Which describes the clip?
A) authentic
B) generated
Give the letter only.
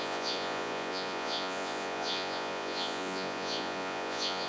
B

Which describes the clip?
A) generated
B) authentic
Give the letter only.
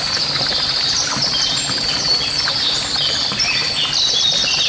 B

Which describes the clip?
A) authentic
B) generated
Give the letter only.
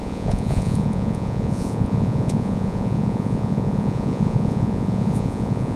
B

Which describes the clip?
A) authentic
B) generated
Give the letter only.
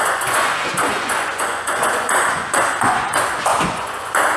B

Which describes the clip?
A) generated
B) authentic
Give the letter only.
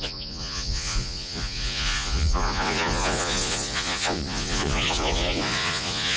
A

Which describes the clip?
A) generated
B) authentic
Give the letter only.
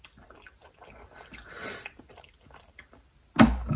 B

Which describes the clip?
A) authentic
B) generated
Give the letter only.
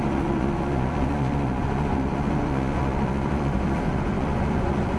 B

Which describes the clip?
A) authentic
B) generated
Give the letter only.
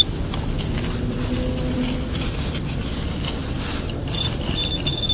A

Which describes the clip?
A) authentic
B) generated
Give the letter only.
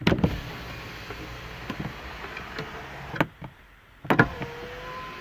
A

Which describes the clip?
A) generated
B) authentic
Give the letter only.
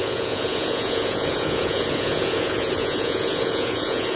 A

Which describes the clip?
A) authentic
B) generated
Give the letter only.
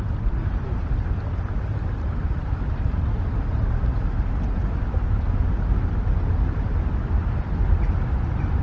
A